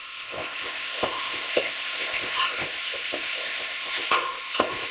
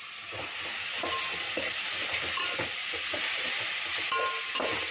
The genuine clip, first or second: second